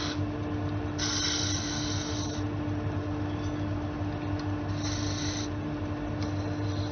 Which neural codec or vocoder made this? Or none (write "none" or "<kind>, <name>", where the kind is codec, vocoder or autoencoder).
none